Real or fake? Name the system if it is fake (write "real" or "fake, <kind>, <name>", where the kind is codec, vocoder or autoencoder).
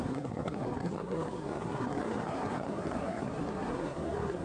fake, codec, SNAC